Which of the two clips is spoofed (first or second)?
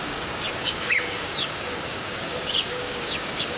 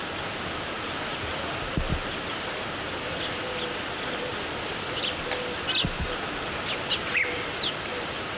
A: first